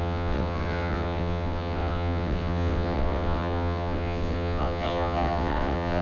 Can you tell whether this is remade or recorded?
remade